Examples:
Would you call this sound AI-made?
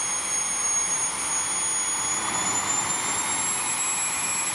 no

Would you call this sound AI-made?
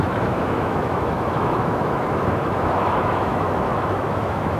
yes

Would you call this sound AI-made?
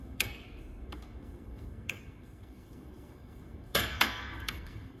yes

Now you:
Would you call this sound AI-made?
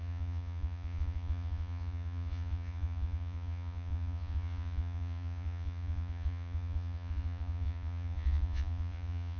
yes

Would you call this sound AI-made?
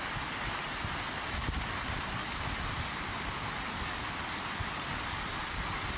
no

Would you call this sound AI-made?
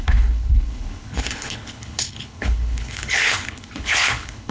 yes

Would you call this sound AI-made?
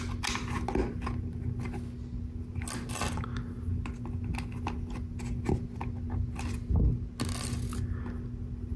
no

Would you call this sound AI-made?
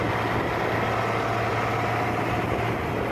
no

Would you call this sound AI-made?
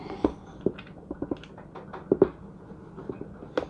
no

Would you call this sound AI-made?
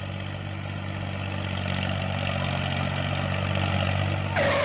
no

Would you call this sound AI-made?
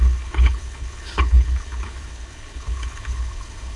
yes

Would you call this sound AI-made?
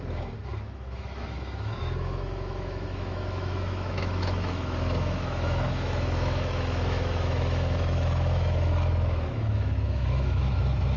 yes